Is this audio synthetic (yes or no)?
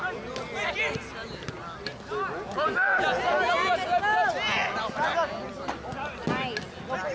no